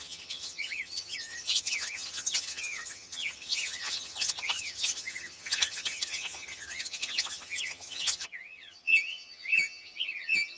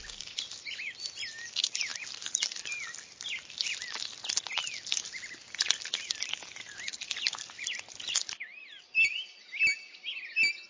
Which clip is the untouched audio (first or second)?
second